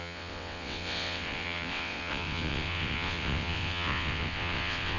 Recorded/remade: remade